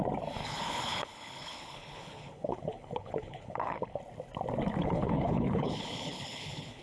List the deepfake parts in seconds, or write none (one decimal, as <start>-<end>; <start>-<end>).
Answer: 0.4-4.0; 4.8-6.8